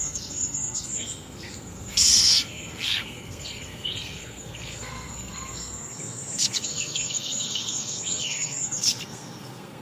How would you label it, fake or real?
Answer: fake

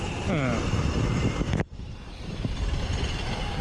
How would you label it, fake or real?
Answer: fake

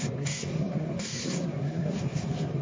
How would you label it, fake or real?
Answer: fake